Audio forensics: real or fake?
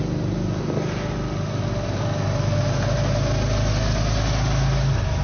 real